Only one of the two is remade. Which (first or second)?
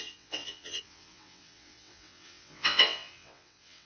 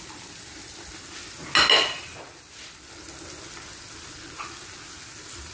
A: first